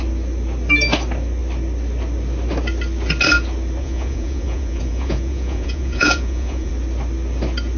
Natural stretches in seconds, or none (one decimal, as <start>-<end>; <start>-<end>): 0.0-3.8; 6.7-7.8